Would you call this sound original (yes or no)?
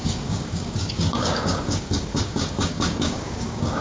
no